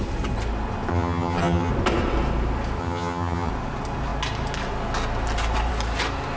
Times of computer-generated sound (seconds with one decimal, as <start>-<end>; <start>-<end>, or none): 0.9-1.7; 2.8-3.5